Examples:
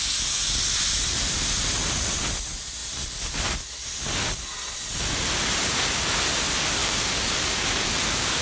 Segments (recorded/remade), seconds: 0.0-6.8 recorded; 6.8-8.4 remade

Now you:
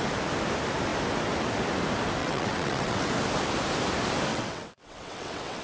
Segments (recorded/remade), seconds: 0.0-2.2 recorded; 2.2-3.1 remade; 3.1-4.3 recorded; 4.3-5.6 remade

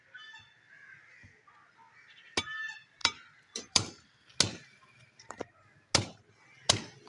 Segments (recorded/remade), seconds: 0.0-3.0 recorded; 3.0-4.1 remade; 4.1-7.1 recorded